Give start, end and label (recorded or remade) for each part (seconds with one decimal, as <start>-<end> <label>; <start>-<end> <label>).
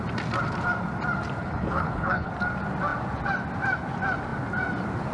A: 0.0-1.4 recorded; 1.4-2.3 remade; 2.3-5.1 recorded